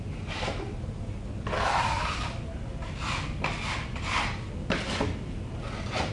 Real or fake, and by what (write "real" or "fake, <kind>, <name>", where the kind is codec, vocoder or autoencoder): real